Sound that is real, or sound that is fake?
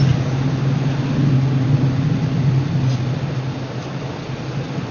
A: real